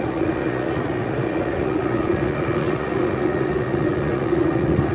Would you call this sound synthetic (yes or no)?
yes